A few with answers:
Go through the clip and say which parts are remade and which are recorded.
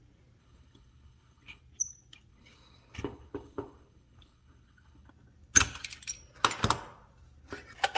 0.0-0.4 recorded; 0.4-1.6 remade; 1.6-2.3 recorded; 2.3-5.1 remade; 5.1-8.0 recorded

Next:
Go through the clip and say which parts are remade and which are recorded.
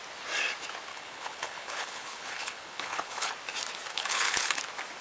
0.0-0.9 recorded; 0.9-3.3 remade; 3.3-3.9 recorded; 3.9-4.6 remade; 4.6-5.0 recorded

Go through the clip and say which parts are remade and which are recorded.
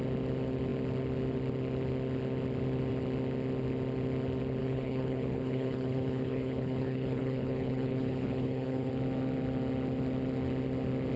0.0-4.6 recorded; 4.6-8.9 remade; 8.9-11.2 recorded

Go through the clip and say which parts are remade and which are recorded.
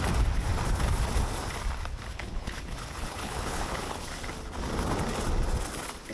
0.0-2.1 recorded; 2.1-4.0 remade; 4.0-6.1 recorded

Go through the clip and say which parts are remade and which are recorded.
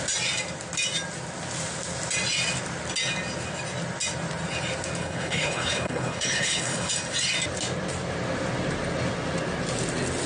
0.0-5.0 recorded; 5.0-6.9 remade; 6.9-10.3 recorded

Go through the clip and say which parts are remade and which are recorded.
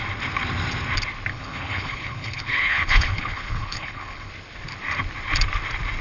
0.0-1.3 recorded; 1.3-4.3 remade; 4.3-6.0 recorded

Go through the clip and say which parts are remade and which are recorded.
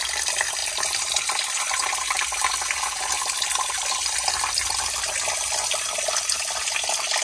0.0-7.2 recorded